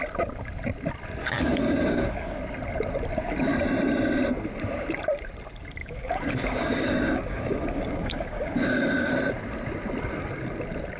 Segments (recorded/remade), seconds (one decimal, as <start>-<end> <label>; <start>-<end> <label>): 0.0-1.2 recorded; 1.2-2.4 remade; 2.4-5.8 recorded; 5.8-9.1 remade; 9.1-11.0 recorded